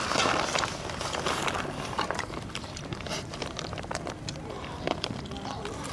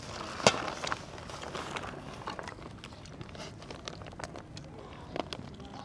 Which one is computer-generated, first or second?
first